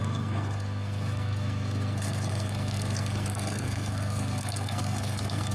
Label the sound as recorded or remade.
remade